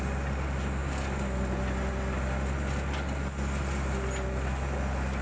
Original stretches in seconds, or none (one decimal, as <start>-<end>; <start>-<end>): 0.0-5.2